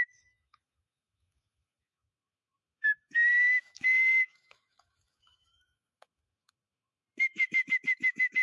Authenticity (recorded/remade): remade